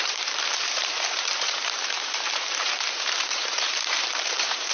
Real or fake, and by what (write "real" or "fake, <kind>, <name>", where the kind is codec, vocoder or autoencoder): fake, vocoder, BigVGAN v2